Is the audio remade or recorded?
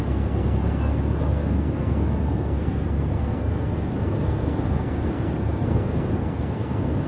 remade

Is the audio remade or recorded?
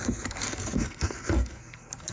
remade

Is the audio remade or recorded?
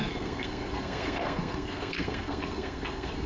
remade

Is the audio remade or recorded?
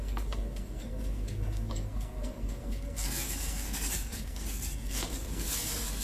remade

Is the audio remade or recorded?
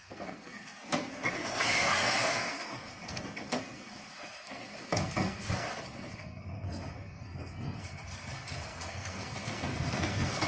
remade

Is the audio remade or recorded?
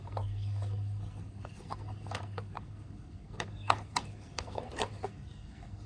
remade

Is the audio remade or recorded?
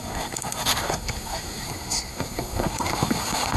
remade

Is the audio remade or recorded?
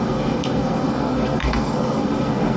remade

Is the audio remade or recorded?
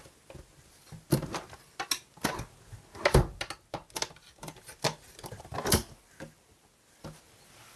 recorded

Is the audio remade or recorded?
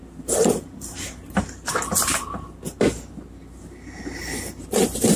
recorded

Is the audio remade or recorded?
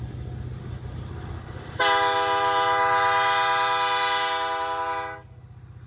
recorded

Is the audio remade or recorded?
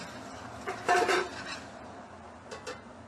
recorded